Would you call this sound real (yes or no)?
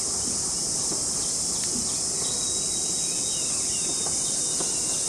yes